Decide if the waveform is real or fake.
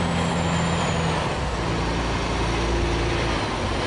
real